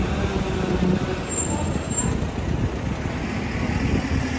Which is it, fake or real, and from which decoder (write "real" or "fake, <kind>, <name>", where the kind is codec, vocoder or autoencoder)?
real